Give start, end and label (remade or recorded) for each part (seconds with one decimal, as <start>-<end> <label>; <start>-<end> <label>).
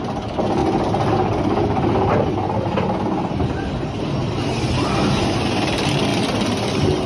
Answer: 0.0-7.1 recorded